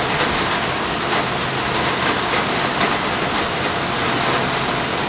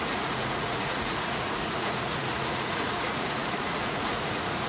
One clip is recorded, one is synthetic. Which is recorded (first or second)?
first